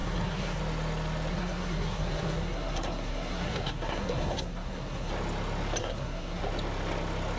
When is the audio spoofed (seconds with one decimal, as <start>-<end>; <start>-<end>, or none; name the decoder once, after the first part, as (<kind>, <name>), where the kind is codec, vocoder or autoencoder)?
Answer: 0.0-0.6 (codec, SNAC); 1.3-5.1; 5.8-6.4